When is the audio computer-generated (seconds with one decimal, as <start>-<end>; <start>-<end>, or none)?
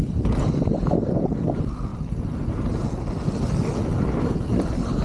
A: none